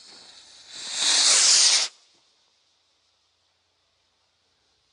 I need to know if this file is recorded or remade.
recorded